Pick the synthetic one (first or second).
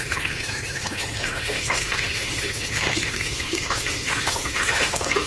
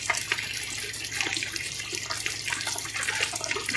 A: first